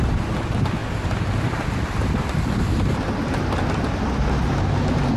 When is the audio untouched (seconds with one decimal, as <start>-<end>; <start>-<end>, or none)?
0.0-0.8; 3.9-5.2